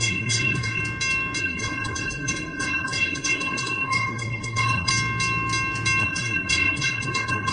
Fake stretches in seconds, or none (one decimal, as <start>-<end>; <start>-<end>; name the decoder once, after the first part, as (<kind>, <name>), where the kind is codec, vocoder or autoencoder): 0.0-0.8 (codec, SNAC); 1.4-4.9; 6.0-7.5